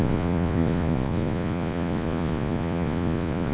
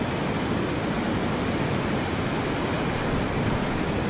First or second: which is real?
second